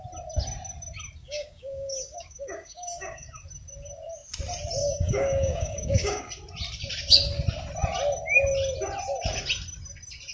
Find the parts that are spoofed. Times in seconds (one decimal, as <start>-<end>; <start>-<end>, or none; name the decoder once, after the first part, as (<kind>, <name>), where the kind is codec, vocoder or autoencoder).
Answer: 1.2-3.4 (codec, DAC); 4.8-6.3